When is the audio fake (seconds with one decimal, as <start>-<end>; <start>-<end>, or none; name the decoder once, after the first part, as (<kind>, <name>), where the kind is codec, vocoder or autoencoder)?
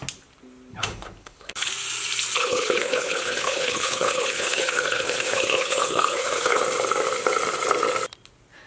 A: 0.7-1.7 (codec, HILCodec); 2.4-6.6